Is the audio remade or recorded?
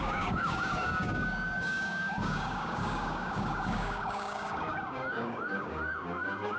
remade